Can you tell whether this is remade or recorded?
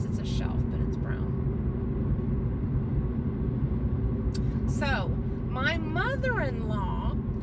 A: recorded